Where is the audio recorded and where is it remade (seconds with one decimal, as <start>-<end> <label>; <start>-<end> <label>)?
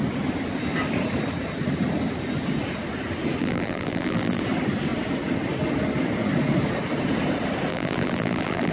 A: 0.0-3.4 recorded; 3.4-4.4 remade; 4.4-7.7 recorded; 7.7-8.7 remade